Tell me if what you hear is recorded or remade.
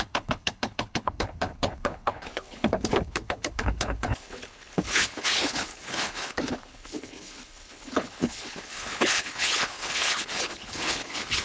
remade